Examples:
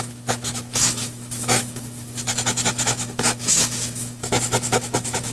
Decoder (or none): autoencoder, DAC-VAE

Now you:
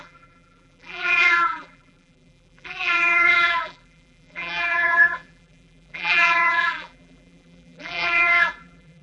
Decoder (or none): vocoder, BigVGAN v2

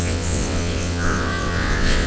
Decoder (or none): vocoder, WaveNeXt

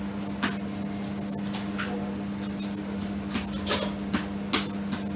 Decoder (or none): none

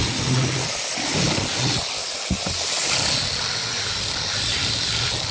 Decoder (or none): none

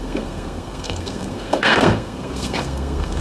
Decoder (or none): codec, SNAC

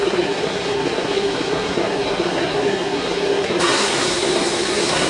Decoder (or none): codec, SNAC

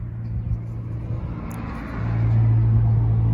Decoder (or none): none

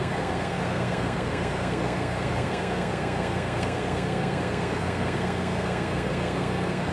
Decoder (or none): codec, SNAC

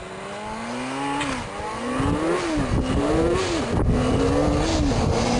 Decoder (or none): none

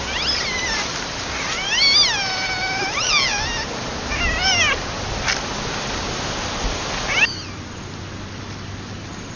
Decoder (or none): none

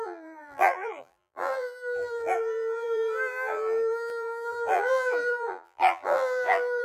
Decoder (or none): vocoder, BigVGAN v2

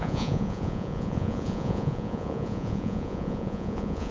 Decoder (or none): vocoder, Vocos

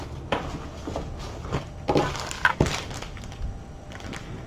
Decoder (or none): none